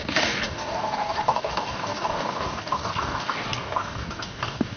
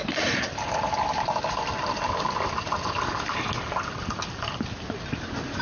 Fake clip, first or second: first